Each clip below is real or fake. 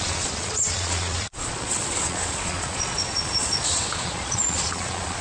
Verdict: fake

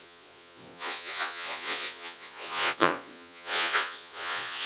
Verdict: fake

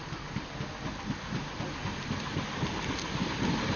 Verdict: real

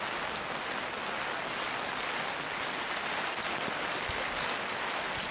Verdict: real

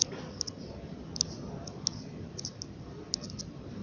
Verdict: real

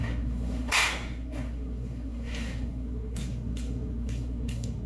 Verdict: fake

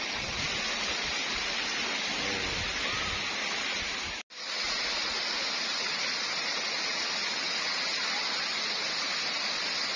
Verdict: real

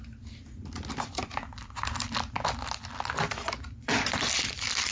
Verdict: fake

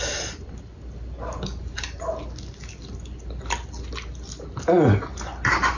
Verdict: real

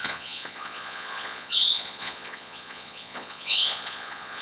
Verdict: fake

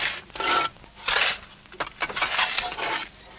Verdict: real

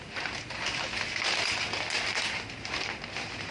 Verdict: real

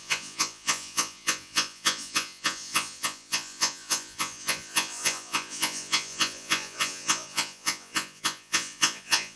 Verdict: fake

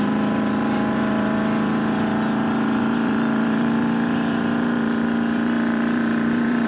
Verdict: fake